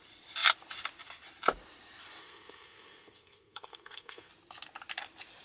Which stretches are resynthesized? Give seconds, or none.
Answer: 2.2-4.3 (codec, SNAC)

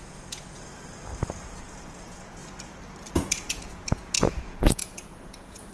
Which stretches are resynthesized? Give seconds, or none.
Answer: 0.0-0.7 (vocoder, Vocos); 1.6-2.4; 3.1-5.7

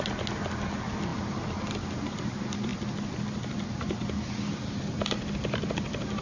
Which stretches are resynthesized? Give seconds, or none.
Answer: none